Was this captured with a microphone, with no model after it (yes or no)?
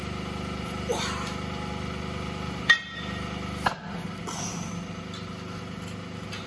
yes